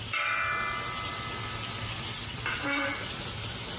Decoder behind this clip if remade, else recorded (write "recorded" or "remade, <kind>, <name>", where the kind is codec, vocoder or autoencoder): recorded